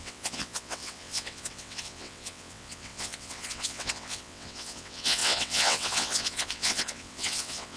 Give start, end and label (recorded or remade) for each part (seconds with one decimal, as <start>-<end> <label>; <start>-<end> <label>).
0.0-7.8 remade